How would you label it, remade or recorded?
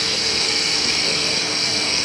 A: remade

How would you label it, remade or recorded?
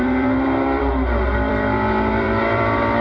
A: remade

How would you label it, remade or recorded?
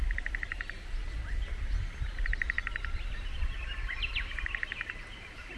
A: recorded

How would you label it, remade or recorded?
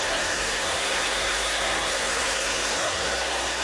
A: remade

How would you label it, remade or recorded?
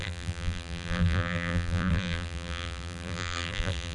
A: remade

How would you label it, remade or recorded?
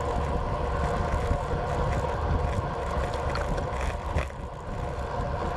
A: recorded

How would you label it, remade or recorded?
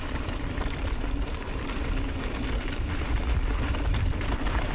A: remade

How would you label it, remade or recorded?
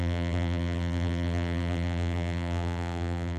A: remade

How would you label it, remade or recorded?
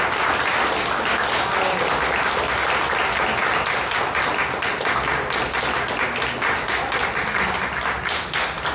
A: recorded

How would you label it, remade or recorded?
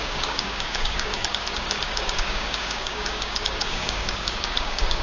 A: remade